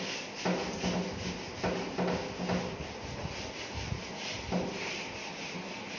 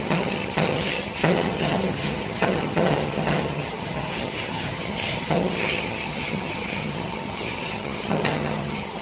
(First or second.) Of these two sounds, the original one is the first